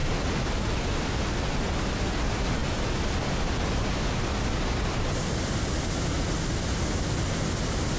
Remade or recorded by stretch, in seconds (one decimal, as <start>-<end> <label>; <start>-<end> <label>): 0.0-8.0 recorded